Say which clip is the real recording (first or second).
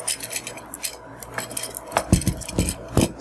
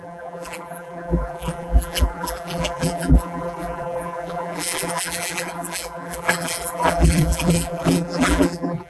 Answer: first